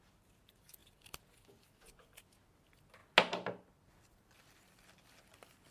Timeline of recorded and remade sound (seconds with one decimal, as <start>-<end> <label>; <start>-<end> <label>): 0.0-5.7 recorded